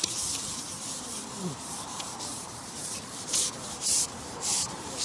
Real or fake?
fake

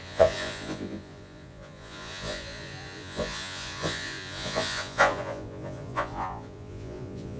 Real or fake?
fake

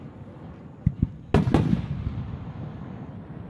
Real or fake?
real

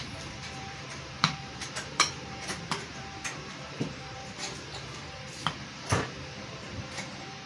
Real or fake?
fake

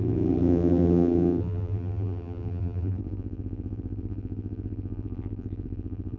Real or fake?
fake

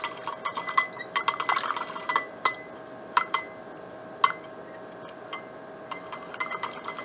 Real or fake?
real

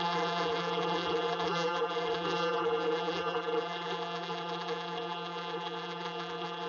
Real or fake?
fake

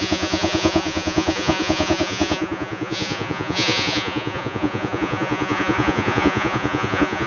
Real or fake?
fake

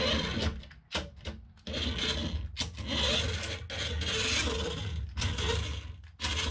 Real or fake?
real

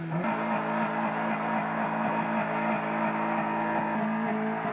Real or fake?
real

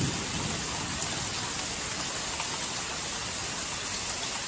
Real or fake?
real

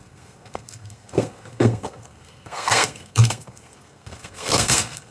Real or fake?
fake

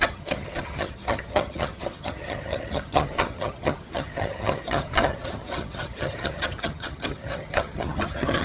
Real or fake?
fake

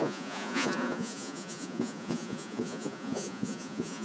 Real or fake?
fake